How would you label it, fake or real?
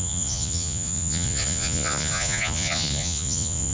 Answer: fake